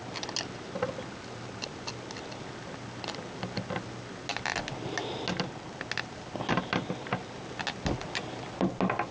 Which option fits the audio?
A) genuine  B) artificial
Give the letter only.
A